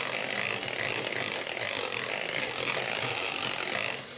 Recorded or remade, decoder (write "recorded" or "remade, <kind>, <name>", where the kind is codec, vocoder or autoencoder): recorded